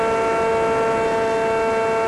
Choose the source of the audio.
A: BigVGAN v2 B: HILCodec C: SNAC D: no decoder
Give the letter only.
D